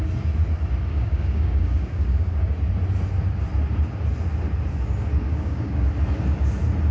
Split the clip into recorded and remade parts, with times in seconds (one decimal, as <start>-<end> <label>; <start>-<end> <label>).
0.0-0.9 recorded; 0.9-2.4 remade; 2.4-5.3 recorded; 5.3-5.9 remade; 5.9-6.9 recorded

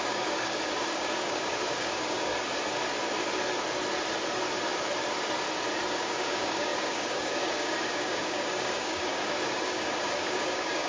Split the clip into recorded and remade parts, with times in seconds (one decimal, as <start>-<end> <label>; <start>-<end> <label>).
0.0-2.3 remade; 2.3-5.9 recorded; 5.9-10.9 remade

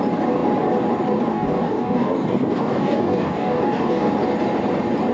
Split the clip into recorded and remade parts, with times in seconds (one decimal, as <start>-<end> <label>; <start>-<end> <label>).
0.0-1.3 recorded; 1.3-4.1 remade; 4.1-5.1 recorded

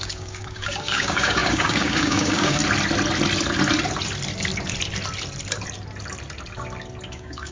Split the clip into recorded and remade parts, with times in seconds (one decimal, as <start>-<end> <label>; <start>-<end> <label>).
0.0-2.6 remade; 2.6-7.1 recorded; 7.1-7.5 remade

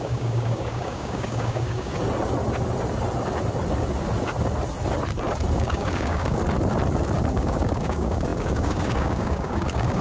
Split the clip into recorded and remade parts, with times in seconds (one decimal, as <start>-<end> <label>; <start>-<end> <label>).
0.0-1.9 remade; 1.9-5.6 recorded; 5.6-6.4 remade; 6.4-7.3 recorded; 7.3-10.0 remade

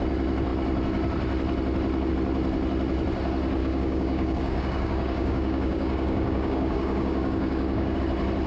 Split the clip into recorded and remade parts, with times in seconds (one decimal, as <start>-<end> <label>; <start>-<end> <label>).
0.0-3.6 recorded; 3.6-8.0 remade; 8.0-8.5 recorded

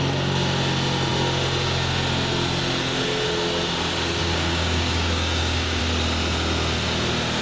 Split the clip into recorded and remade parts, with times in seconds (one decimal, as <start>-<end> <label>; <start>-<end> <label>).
0.0-4.2 recorded; 4.2-5.8 remade; 5.8-7.4 recorded

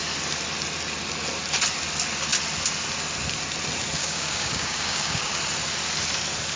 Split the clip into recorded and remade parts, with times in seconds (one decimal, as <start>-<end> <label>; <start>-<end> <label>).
0.0-4.0 recorded; 4.0-5.4 remade; 5.4-6.6 recorded